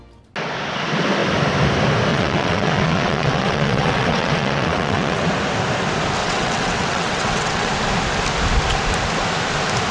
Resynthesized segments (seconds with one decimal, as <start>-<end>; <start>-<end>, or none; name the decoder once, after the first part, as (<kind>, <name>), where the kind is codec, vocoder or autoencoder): 2.1-5.2 (vocoder, WaveNeXt); 6.2-7.7